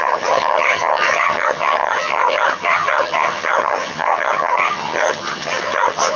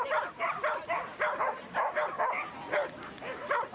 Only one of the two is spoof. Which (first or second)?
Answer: first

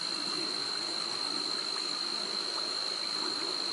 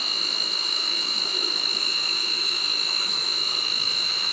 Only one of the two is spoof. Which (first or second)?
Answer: second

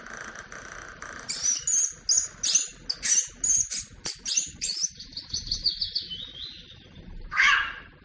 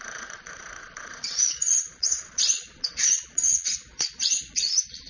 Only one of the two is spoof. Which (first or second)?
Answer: second